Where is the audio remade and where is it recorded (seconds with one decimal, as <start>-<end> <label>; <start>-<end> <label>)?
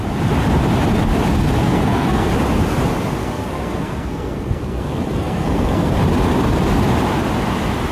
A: 0.0-1.6 recorded; 1.6-2.3 remade; 2.3-3.2 recorded; 3.2-5.9 remade; 5.9-7.9 recorded